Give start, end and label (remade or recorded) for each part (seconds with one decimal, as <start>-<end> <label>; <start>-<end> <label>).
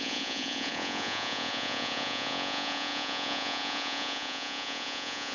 0.0-5.3 remade